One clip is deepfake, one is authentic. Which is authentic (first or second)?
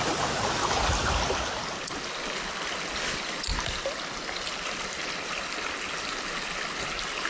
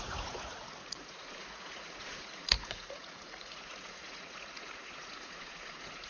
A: first